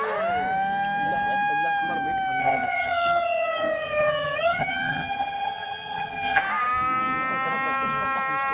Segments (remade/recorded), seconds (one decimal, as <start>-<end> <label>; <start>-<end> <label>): 0.0-2.4 recorded; 2.4-6.4 remade; 6.4-8.5 recorded